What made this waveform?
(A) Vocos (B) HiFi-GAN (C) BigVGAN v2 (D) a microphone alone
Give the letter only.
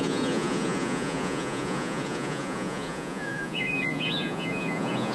A